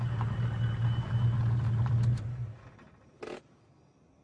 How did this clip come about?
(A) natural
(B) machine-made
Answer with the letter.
A